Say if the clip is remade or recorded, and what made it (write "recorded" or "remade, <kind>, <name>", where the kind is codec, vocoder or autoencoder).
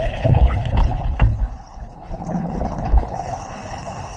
remade, codec, HILCodec